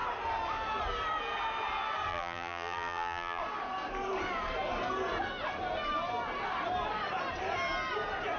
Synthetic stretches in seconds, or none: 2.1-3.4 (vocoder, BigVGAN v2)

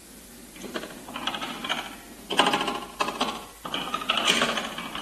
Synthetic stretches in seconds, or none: 0.7-1.6 (vocoder, BigVGAN v2); 3.3-5.0

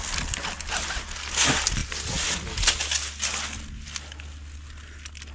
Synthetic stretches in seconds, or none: none

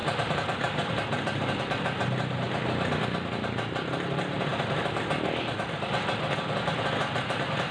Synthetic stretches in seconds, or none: 0.0-0.9 (vocoder, BigVGAN v2); 4.5-5.0; 7.0-7.7

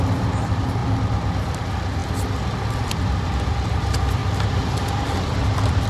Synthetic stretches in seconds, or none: 0.0-2.0 (vocoder, BigVGAN v2); 2.7-4.2; 5.0-5.9